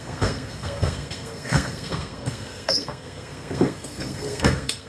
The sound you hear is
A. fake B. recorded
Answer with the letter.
A